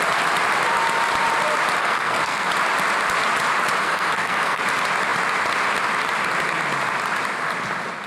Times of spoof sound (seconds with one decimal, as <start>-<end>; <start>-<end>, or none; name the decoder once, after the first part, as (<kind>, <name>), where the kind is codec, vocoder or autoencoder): 1.8-2.5 (codec, SNAC); 3.8-4.6